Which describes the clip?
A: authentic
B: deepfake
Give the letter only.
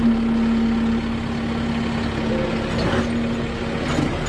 A